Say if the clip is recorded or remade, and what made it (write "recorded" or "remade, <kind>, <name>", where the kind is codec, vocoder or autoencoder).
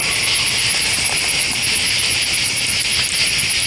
recorded